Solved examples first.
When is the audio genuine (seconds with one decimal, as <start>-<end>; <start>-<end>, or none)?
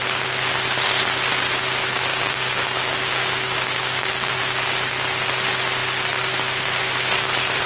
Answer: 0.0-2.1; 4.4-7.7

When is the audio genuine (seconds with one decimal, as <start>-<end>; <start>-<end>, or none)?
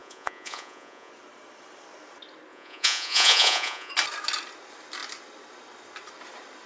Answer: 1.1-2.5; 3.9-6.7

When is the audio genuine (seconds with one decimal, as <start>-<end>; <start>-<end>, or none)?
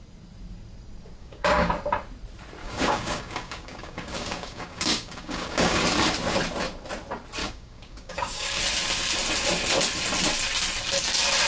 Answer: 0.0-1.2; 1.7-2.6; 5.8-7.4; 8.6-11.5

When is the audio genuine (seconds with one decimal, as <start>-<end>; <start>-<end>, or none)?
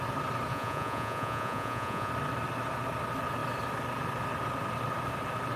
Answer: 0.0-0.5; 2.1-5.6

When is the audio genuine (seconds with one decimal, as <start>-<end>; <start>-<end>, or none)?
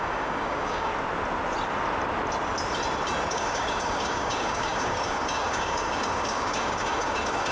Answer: 0.9-3.3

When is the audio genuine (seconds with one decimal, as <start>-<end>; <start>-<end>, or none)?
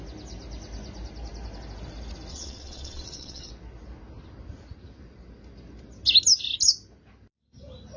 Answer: 0.0-2.3; 3.5-8.0